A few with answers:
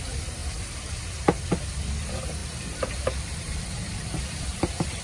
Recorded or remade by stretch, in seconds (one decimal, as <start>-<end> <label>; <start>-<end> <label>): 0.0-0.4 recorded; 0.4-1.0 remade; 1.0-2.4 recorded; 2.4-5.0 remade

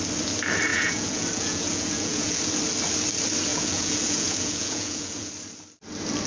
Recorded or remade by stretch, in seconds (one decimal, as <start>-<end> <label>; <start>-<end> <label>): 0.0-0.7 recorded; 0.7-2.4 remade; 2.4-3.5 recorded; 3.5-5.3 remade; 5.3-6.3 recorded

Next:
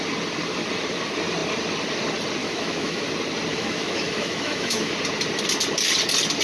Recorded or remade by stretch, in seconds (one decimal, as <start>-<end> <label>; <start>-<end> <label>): 0.0-2.4 recorded; 2.4-3.0 remade; 3.0-3.5 recorded; 3.5-4.9 remade; 4.9-6.4 recorded

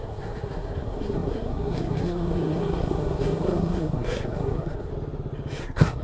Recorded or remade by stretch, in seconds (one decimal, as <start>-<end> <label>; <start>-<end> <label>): 0.0-4.9 remade; 4.9-5.6 recorded; 5.6-6.0 remade

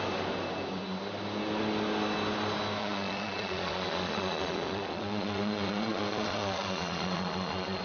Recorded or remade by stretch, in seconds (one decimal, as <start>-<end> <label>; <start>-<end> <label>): 0.0-2.8 recorded; 2.8-7.8 remade